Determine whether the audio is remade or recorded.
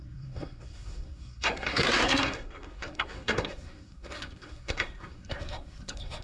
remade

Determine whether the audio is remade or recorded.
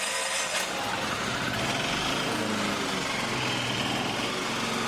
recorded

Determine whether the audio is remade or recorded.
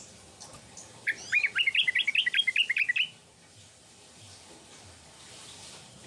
recorded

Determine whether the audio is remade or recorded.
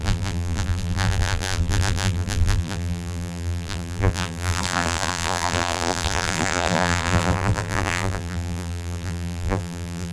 remade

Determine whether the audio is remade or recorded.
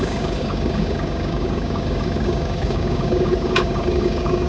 remade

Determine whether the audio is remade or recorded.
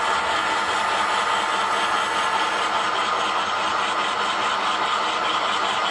recorded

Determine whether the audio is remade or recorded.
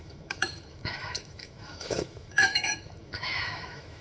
remade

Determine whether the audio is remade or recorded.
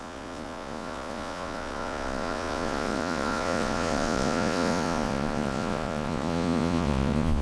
remade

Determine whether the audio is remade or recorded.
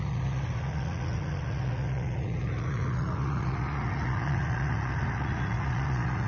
remade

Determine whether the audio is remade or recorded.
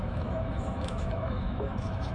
remade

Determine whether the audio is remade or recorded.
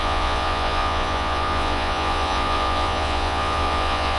remade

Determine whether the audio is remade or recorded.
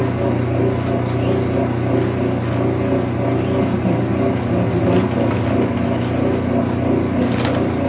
recorded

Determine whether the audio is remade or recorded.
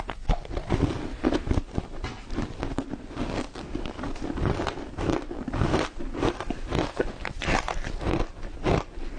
remade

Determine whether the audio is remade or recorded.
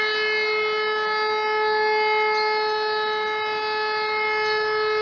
recorded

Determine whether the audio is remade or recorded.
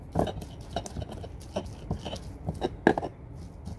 recorded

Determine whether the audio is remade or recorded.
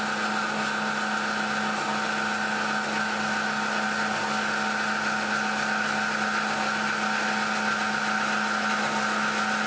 recorded